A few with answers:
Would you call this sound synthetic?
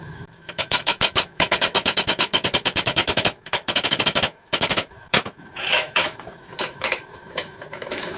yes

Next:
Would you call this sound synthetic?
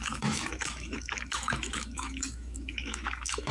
yes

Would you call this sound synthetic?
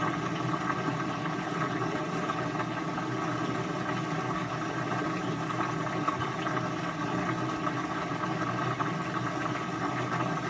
no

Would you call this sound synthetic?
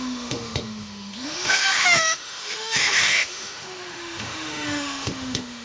yes